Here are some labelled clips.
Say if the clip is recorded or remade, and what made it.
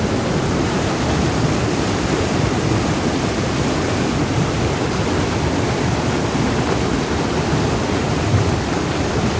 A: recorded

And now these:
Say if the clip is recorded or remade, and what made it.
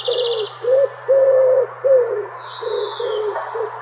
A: recorded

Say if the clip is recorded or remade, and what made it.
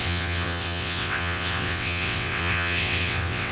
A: remade, vocoder, WaveNeXt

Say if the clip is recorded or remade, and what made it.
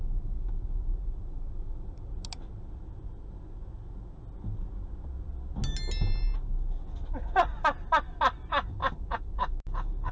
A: recorded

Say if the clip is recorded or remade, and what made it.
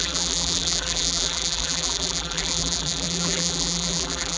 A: remade, vocoder, BigVGAN v2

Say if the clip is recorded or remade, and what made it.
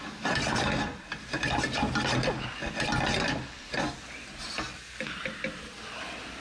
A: recorded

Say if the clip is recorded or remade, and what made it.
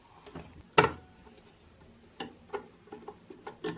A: recorded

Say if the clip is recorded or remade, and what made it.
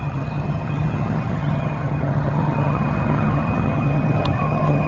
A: remade, vocoder, HiFi-GAN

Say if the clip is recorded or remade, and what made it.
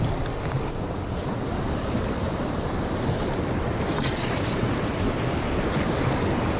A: recorded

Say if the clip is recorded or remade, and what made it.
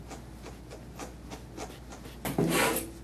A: recorded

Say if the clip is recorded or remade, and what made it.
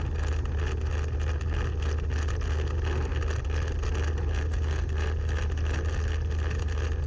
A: recorded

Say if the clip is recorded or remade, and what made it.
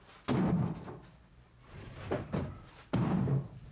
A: recorded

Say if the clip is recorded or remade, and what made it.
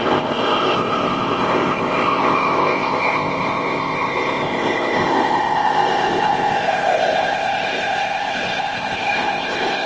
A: remade, codec, ZipCodec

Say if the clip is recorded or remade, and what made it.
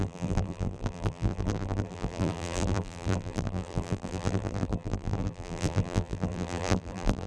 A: remade, vocoder, BigVGAN v2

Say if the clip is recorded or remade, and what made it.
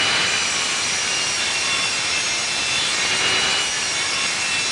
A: recorded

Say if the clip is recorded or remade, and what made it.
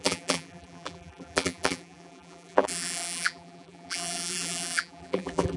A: remade, vocoder, BigVGAN v2